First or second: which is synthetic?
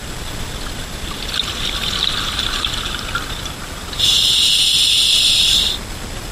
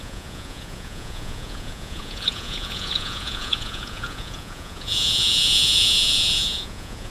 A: second